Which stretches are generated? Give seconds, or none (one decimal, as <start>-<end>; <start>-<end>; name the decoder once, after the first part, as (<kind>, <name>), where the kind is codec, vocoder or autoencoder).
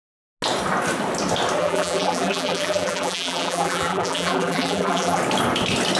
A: 1.6-5.2 (vocoder, BigVGAN v2)